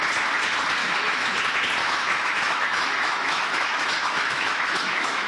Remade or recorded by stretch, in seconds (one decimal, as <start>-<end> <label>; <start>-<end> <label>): 0.0-0.8 recorded; 0.8-1.4 remade; 1.4-1.8 recorded; 1.8-5.3 remade